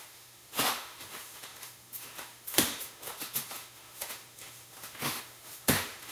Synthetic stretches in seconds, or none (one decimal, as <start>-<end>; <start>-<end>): 0.0-6.1